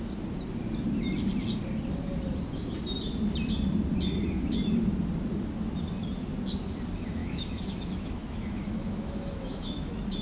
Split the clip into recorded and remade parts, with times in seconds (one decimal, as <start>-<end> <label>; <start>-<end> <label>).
0.0-7.2 recorded; 7.2-10.2 remade